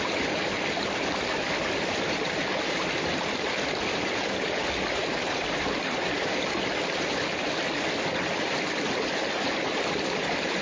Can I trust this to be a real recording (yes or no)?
no